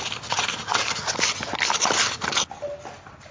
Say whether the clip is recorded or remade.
recorded